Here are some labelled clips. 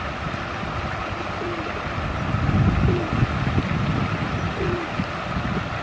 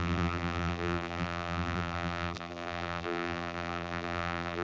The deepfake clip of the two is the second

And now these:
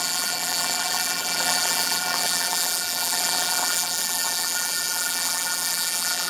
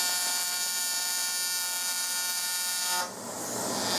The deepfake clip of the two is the first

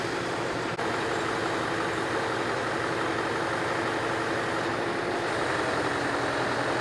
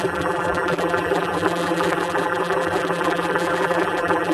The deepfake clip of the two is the second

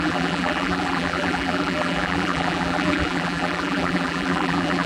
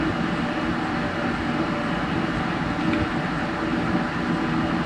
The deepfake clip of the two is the first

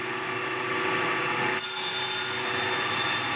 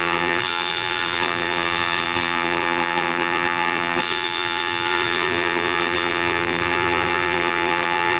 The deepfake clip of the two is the second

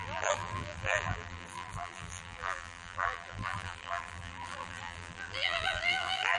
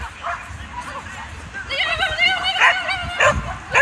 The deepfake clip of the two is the first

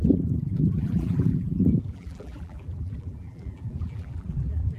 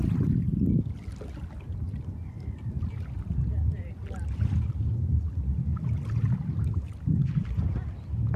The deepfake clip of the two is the first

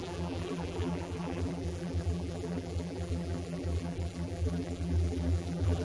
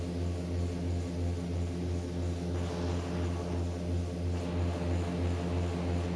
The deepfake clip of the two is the first